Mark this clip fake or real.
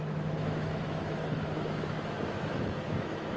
fake